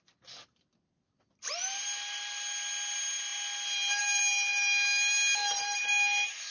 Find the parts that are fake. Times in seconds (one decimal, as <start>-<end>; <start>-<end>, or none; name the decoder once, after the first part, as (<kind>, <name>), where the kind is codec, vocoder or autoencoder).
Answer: none